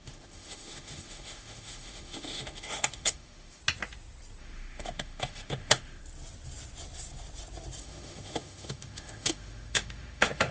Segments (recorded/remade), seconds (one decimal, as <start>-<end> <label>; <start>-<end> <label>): 0.0-3.6 remade; 3.6-4.4 recorded; 4.4-6.0 remade; 6.0-7.8 recorded; 7.8-10.5 remade

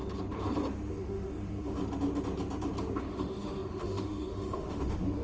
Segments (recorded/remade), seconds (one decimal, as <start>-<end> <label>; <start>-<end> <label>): 0.0-0.9 recorded; 0.9-1.8 remade; 1.8-3.0 recorded; 3.0-5.2 remade

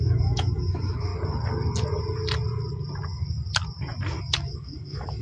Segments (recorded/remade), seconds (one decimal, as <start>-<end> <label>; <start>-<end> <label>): 0.0-1.1 remade; 1.1-4.2 recorded; 4.2-5.2 remade

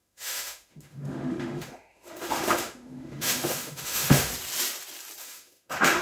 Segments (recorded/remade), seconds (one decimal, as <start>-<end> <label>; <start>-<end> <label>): 0.0-4.3 remade; 4.3-5.2 recorded; 5.2-6.0 remade

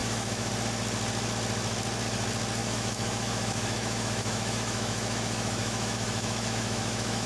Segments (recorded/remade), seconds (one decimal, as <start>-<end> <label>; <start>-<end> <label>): 0.0-0.5 remade; 0.5-2.6 recorded; 2.6-7.3 remade

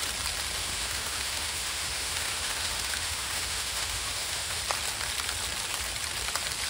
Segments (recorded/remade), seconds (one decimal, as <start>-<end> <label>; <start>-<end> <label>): 0.0-0.6 recorded; 0.6-4.6 remade; 4.6-6.7 recorded

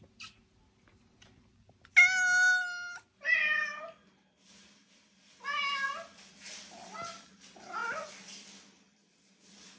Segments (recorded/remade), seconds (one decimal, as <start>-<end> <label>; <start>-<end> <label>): 0.0-9.8 recorded